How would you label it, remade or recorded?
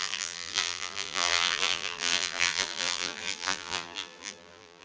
remade